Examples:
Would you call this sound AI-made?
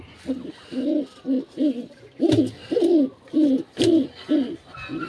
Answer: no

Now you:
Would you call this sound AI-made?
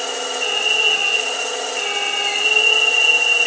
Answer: no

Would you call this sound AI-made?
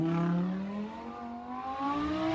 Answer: no